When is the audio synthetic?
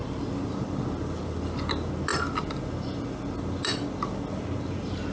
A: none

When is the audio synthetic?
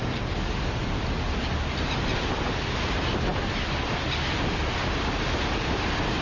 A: none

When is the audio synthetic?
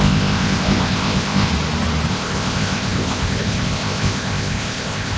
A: 0.0-1.5 (codec, ZipCodec); 2.1-5.2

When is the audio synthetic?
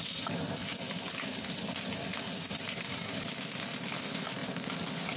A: none